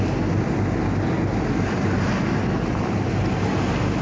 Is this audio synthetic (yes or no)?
no